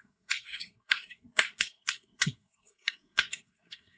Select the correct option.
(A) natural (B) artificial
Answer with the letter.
B